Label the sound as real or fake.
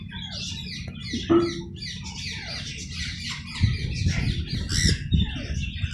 real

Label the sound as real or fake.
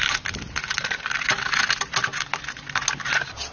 real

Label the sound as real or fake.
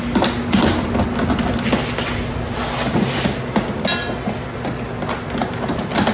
real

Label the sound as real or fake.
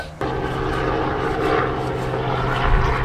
real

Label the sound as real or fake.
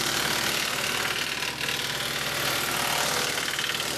real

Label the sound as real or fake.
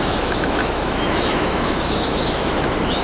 fake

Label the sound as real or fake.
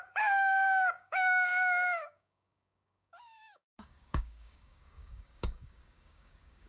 fake